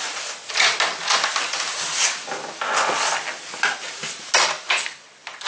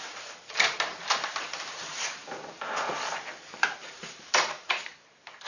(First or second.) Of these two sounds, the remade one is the second